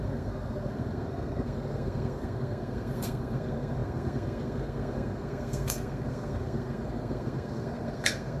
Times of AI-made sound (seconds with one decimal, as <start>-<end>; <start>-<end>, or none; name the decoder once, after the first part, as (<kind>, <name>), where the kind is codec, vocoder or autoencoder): 0.0-8.4 (codec, SNAC)